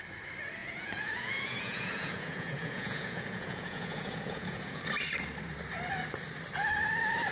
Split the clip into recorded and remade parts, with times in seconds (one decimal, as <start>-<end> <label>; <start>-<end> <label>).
0.0-0.6 recorded; 0.6-4.8 remade; 4.8-7.3 recorded